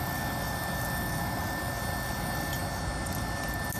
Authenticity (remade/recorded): recorded